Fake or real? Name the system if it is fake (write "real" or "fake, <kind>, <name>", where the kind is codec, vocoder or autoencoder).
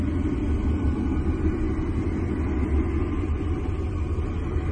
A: real